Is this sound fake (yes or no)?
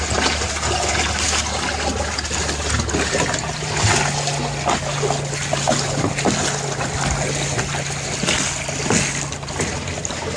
no